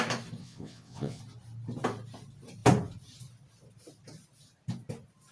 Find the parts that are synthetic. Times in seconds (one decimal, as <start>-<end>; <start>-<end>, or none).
0.4-1.2